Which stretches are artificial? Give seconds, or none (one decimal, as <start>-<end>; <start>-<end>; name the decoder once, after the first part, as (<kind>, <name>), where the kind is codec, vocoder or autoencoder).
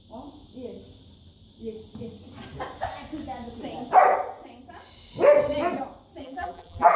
6.2-7.0 (vocoder, BigVGAN v2)